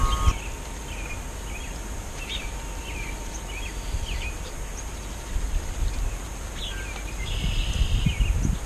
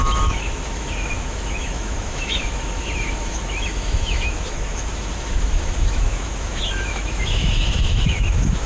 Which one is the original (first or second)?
first